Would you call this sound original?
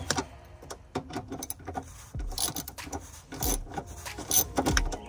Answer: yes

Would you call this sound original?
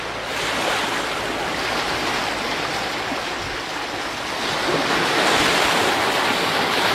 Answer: yes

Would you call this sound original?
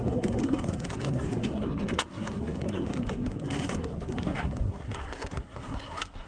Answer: no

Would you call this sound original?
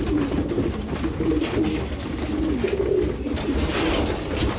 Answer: yes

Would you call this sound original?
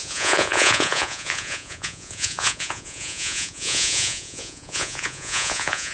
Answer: no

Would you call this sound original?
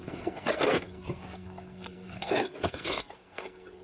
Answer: no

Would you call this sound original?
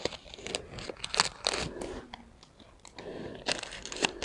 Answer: yes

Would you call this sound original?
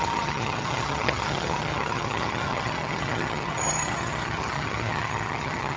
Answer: no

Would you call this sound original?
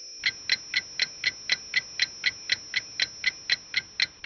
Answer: yes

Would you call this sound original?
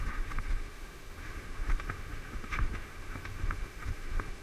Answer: no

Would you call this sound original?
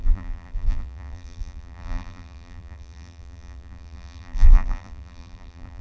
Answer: no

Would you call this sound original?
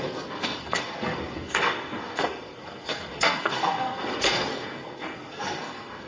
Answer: no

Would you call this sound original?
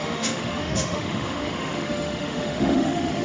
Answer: no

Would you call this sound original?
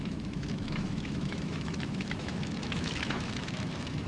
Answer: no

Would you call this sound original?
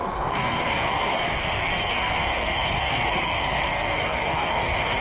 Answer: no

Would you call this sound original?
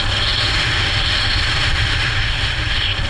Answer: yes